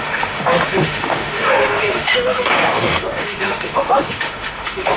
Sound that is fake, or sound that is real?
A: fake